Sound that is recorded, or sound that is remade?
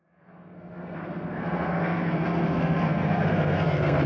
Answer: remade